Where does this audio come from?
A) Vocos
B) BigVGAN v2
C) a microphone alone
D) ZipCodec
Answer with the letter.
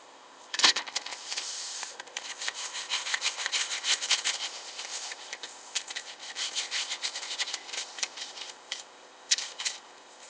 D